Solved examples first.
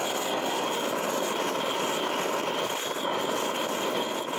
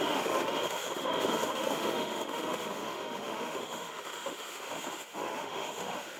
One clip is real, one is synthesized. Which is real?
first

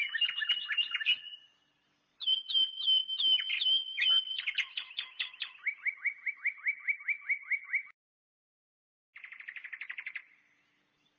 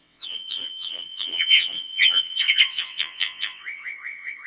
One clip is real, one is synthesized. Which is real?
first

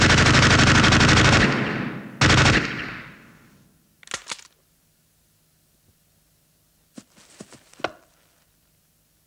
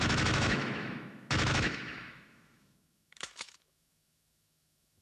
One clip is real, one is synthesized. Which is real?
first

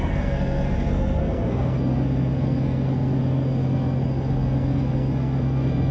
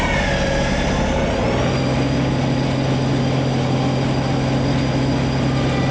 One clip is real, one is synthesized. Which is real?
second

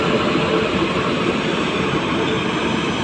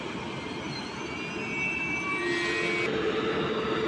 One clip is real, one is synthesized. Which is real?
second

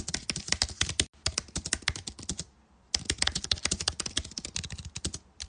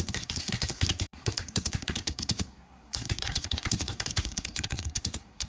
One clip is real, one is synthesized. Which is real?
first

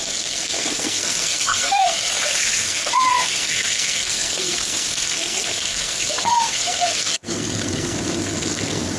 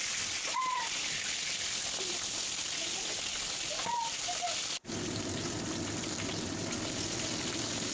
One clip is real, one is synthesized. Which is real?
second